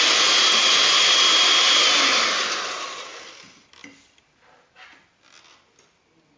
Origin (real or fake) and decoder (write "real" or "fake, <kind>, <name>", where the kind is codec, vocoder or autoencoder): real